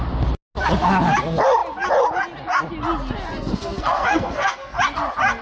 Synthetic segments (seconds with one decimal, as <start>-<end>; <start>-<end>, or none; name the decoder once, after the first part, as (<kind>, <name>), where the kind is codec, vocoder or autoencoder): 3.3-4.8 (codec, SNAC)